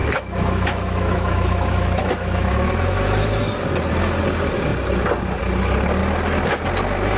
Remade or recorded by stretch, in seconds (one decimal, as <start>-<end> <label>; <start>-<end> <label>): 0.0-3.4 remade; 3.4-7.2 recorded